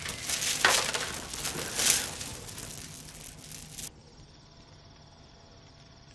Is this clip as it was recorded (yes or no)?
yes